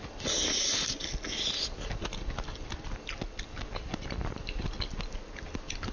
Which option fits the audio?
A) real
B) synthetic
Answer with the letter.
A